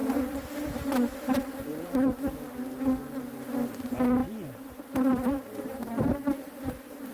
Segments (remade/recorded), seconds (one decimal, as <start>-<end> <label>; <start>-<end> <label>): 0.0-2.2 remade; 2.2-4.2 recorded; 4.2-7.1 remade